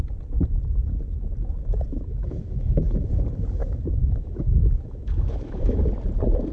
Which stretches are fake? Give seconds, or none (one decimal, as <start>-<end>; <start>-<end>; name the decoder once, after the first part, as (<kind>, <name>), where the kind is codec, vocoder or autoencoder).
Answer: 1.9-3.1 (autoencoder, DAC-VAE); 3.6-5.8